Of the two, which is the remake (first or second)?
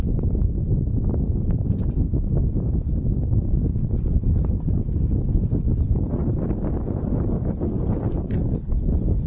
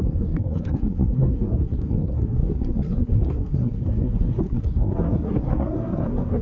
second